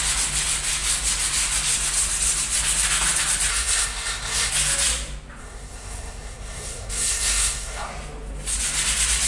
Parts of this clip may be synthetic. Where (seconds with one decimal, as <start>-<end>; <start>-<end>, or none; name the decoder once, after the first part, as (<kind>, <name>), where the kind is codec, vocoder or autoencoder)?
3.5-4.5 (codec, SNAC); 5.4-7.9